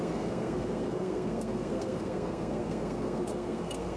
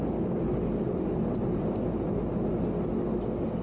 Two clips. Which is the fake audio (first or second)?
first